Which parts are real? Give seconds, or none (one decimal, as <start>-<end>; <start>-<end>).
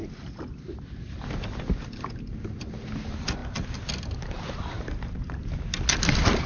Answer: 0.0-6.5